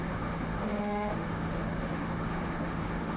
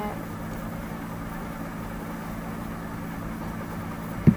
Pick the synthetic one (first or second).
first